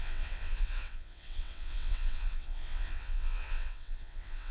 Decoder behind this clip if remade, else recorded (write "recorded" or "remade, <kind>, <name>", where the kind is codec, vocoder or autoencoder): remade, vocoder, WaveNeXt